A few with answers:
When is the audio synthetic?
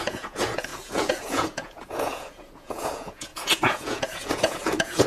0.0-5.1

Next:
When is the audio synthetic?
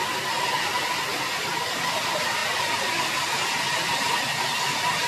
none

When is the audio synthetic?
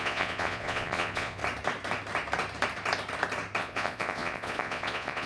0.0-1.4; 3.6-5.3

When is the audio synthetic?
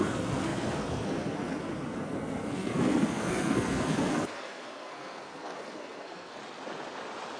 0.0-6.4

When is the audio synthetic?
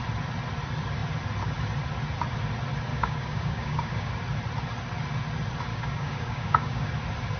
2.9-4.1; 5.7-6.9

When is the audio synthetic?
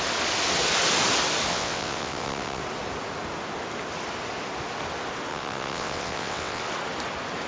1.5-2.6; 5.3-6.6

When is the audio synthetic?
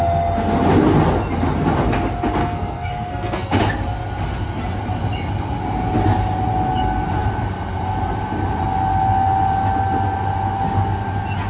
2.4-3.6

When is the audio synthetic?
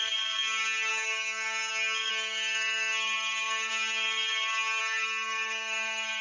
0.9-1.7; 2.1-3.7; 4.8-6.2